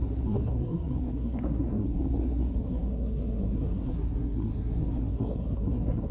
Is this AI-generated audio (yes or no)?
yes